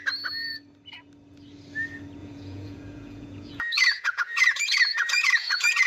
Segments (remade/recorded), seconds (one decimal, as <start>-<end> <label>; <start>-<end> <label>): 0.0-2.2 recorded; 2.2-5.9 remade